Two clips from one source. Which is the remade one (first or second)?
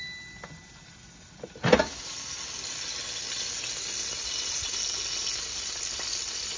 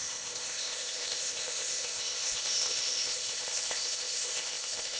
second